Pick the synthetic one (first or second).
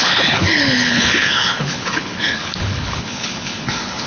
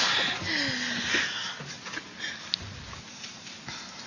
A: first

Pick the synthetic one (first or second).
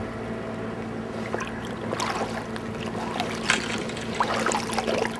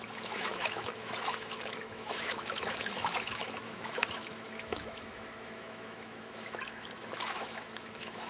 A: second